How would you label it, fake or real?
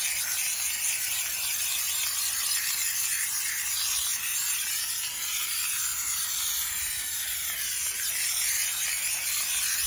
real